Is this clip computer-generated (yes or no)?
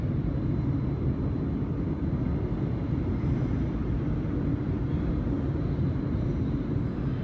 no